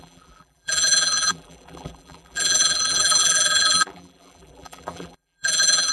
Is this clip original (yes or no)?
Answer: no